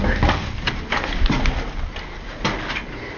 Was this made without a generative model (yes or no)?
yes